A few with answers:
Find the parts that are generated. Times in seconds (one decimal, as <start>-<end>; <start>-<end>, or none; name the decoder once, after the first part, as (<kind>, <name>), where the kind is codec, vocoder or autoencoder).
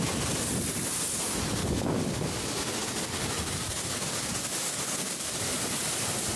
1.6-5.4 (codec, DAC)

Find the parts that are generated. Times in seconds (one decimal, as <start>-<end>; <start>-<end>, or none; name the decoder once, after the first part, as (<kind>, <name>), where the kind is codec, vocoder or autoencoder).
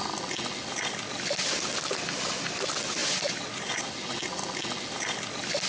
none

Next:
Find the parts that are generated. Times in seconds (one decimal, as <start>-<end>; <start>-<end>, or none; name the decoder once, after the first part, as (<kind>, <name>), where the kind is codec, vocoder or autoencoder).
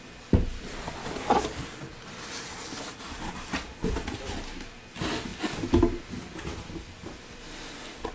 1.0-1.6 (codec, DAC)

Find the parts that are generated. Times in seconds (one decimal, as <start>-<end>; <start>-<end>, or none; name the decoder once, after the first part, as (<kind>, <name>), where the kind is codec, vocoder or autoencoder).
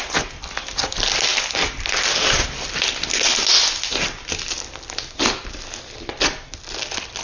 none